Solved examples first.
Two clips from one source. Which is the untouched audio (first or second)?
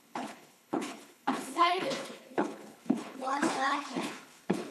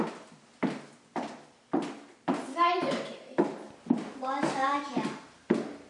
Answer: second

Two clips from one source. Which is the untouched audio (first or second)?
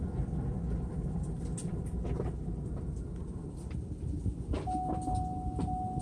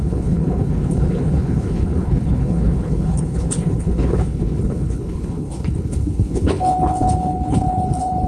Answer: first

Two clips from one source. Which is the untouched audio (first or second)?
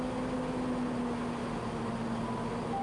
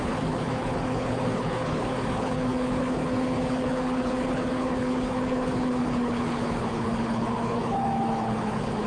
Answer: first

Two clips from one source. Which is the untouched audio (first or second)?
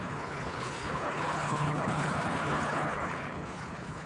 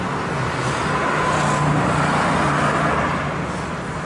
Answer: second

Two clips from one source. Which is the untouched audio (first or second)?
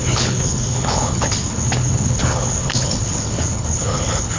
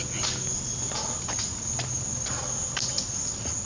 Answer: second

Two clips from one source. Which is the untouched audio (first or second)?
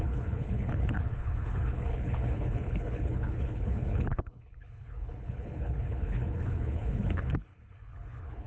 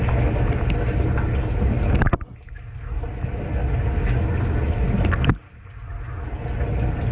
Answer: second